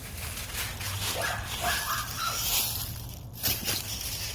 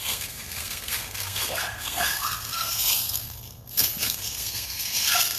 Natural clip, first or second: first